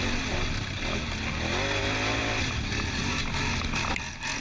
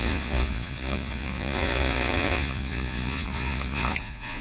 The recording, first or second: first